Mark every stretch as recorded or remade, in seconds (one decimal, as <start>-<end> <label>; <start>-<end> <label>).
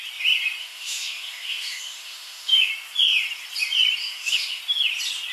0.0-0.6 recorded; 0.6-2.7 remade; 2.7-4.0 recorded; 4.0-4.6 remade; 4.6-5.3 recorded